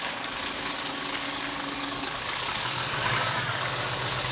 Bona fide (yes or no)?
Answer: no